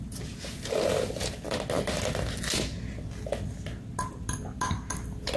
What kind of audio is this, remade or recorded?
recorded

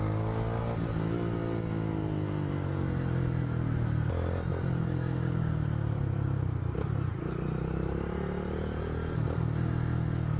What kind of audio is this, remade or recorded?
recorded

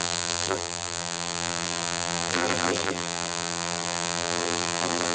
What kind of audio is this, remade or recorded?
remade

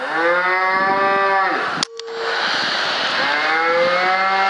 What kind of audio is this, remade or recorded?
recorded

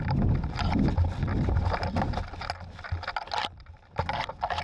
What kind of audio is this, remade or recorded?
recorded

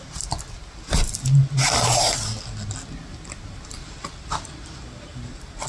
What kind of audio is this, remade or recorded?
recorded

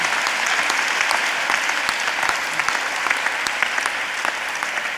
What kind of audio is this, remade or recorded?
recorded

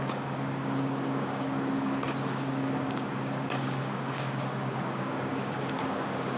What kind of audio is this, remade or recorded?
remade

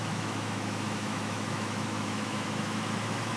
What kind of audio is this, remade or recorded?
remade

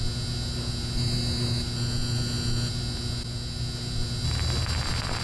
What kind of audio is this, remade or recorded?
recorded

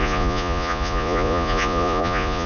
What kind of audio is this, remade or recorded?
remade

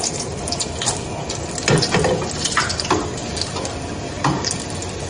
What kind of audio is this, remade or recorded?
recorded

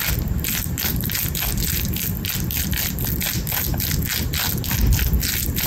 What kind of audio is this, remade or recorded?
recorded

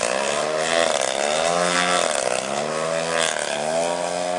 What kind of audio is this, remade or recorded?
recorded